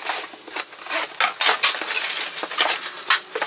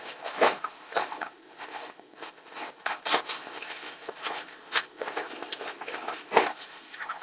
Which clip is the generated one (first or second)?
second